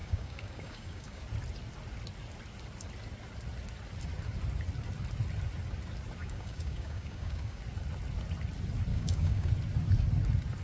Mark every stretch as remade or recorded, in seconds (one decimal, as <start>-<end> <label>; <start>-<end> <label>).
0.0-1.2 remade; 1.2-6.2 recorded; 6.2-7.6 remade; 7.6-8.9 recorded; 8.9-9.5 remade; 9.5-10.6 recorded